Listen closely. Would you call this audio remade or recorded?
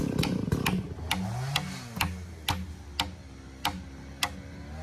recorded